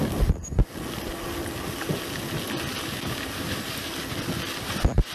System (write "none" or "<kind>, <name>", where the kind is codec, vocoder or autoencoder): none